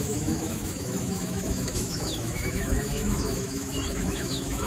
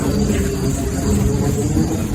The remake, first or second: first